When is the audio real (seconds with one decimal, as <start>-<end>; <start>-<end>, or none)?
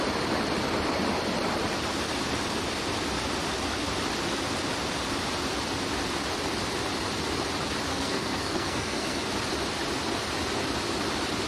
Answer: 0.0-7.9; 9.3-11.5